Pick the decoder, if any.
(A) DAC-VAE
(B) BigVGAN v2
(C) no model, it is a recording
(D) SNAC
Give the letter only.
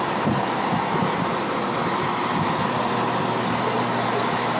C